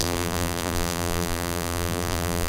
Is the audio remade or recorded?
remade